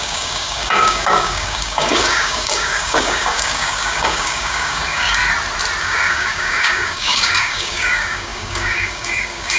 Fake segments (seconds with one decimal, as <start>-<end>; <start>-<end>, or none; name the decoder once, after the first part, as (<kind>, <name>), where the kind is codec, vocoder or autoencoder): 0.0-5.2 (codec, DAC); 5.8-9.6